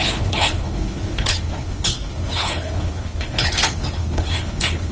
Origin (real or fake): fake